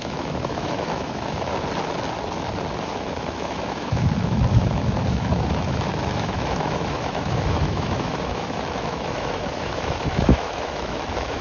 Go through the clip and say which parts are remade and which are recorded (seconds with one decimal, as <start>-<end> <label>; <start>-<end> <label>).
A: 0.0-1.5 remade; 1.5-2.7 recorded; 2.7-11.4 remade